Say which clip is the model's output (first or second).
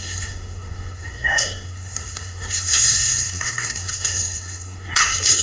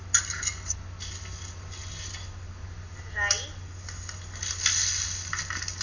first